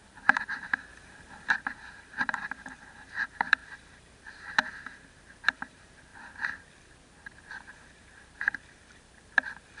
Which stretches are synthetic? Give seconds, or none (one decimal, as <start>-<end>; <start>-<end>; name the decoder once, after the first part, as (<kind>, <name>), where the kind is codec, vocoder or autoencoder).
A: 0.0-6.1 (vocoder, BigVGAN v2); 7.7-9.8